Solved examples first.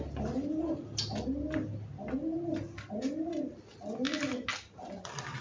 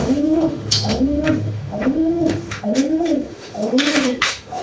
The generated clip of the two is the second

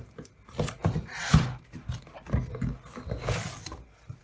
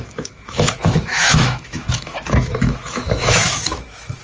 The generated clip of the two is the second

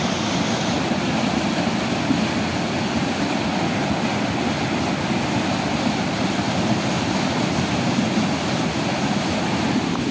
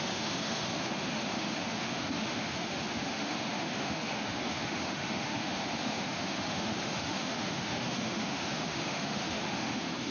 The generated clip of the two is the second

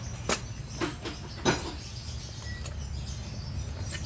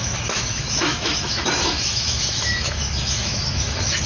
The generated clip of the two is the second